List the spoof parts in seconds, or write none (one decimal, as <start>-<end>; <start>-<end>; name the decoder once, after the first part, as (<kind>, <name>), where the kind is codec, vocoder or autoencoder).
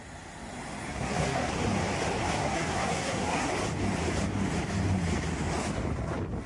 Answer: 0.9-1.5 (codec, SNAC); 2.2-3.5